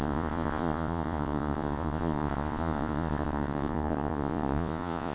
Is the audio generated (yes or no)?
yes